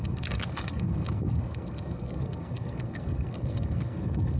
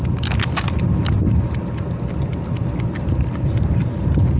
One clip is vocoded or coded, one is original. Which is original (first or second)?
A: second